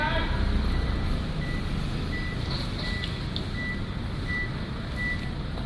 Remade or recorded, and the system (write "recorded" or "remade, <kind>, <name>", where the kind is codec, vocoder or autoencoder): recorded